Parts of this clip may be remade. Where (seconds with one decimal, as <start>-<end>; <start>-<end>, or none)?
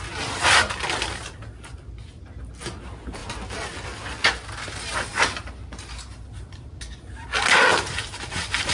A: 8.1-8.7